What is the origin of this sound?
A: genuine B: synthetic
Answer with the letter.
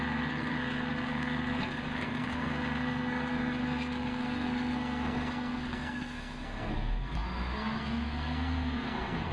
B